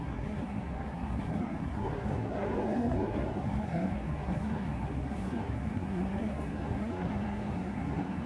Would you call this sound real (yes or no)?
no